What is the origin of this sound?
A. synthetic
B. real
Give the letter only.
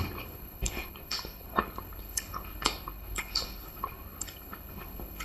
A